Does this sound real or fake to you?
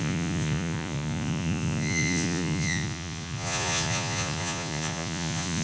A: fake